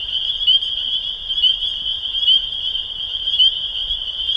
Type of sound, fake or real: fake